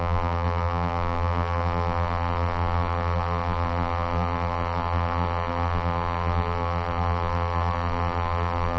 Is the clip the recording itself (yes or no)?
no